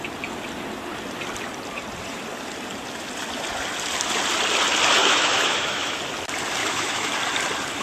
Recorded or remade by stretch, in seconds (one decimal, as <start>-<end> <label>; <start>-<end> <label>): 0.0-5.0 recorded; 5.0-6.0 remade; 6.0-6.6 recorded; 6.6-7.1 remade; 7.1-7.8 recorded

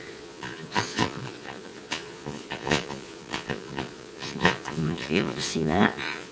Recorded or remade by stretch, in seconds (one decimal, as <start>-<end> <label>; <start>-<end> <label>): 0.0-6.3 remade

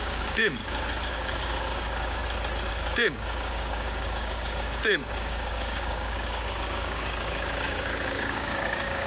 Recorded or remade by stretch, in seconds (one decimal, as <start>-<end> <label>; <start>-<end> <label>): 0.0-0.6 remade; 0.6-1.1 recorded; 1.1-2.2 remade; 2.2-2.7 recorded; 2.7-9.1 remade

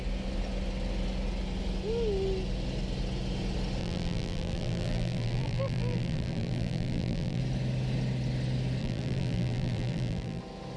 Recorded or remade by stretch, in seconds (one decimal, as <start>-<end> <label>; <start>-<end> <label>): 0.0-3.8 recorded; 3.8-7.4 remade; 7.4-8.8 recorded; 8.8-10.4 remade; 10.4-10.8 recorded

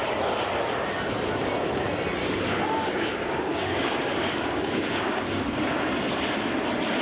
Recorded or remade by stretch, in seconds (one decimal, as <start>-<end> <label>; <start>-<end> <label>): 0.0-2.2 recorded; 2.2-5.8 remade; 5.8-7.0 recorded